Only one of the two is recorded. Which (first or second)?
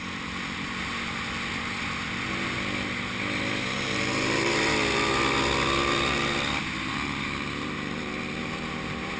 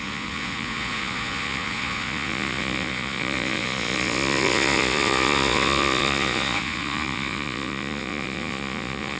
first